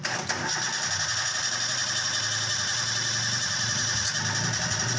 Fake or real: real